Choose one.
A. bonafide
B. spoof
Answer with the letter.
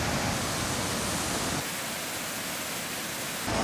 A